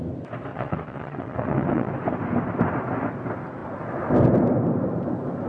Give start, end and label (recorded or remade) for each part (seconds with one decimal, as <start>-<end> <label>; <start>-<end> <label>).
0.0-0.5 recorded; 0.5-1.9 remade; 1.9-5.5 recorded